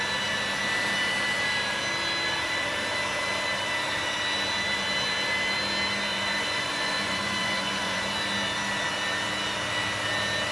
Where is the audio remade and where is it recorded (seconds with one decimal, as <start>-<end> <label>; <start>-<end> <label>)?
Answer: 0.0-6.1 recorded; 6.1-8.0 remade; 8.0-10.5 recorded